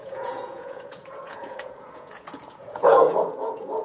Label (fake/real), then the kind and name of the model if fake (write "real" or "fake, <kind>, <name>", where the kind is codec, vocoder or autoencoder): fake, vocoder, Vocos